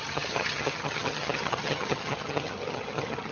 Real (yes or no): no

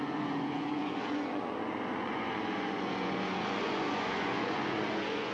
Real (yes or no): no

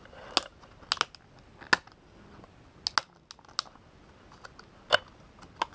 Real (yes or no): yes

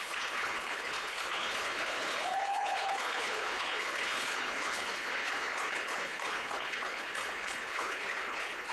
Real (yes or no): no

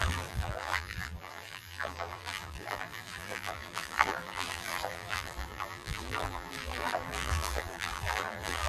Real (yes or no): no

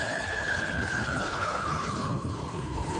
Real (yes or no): no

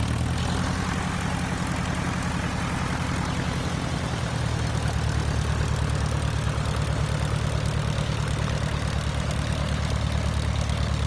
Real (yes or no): yes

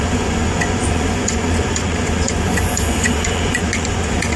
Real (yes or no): no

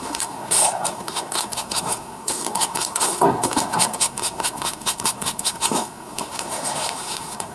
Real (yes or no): no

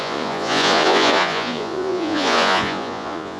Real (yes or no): no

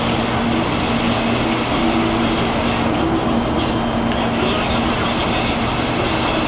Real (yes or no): yes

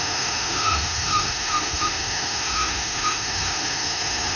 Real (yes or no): no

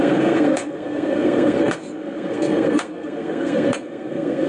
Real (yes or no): no